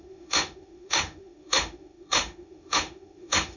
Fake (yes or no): yes